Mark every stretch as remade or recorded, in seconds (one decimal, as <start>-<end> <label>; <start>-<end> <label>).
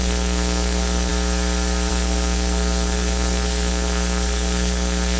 0.0-1.1 remade; 1.1-1.9 recorded; 1.9-5.2 remade